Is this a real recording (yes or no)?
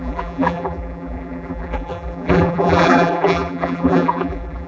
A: no